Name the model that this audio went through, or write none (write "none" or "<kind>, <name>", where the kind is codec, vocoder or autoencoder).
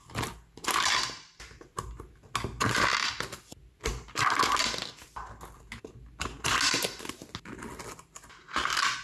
none